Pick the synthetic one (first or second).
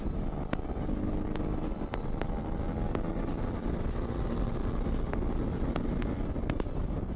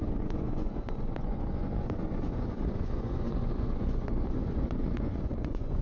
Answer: second